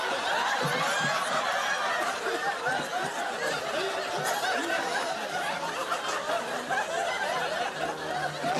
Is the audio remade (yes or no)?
no